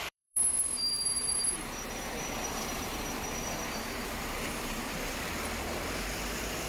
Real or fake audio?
fake